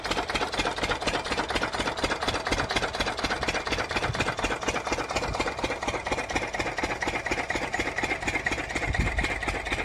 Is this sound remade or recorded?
recorded